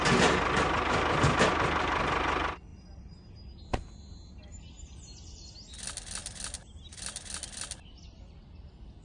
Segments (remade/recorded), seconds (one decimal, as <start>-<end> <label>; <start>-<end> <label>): 0.0-9.0 recorded